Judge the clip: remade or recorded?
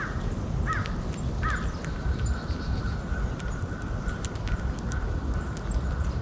recorded